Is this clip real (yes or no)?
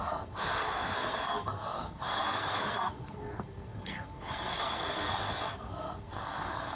no